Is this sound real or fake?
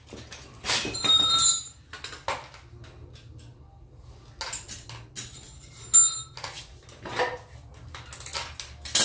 real